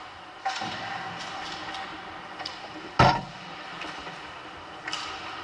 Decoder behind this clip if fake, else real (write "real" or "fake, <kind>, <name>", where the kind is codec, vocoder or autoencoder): real